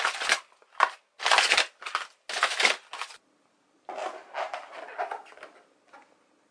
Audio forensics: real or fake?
real